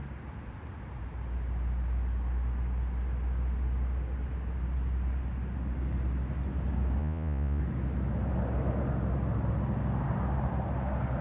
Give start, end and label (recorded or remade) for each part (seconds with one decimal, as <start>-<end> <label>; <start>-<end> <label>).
0.0-7.0 recorded; 7.0-7.6 remade; 7.6-11.2 recorded